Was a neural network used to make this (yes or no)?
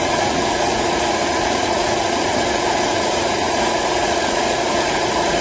yes